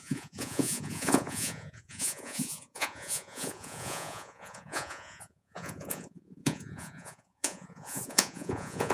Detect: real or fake fake